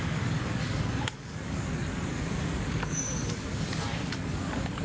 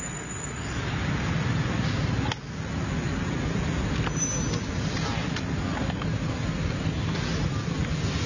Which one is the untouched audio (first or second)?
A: second